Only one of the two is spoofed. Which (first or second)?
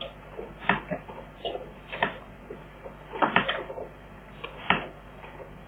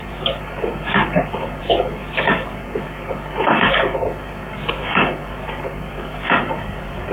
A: second